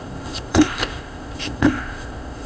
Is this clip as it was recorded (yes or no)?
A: no